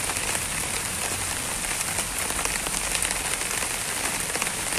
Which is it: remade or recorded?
remade